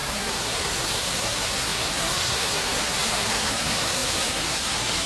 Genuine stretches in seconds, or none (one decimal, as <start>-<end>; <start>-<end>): none